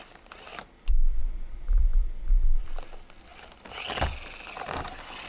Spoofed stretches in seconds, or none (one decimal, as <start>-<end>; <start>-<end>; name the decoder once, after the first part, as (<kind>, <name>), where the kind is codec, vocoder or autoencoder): 1.2-2.7 (vocoder, BigVGAN v2)